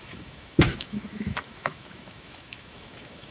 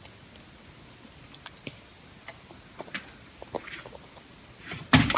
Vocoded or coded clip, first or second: first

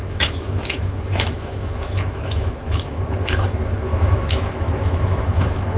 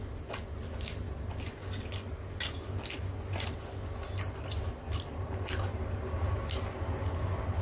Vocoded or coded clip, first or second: first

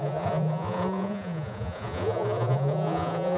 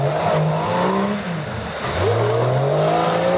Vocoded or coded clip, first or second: first